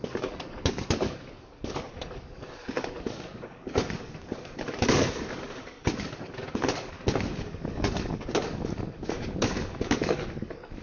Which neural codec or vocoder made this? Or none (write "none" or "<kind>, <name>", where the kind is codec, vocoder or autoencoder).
codec, DAC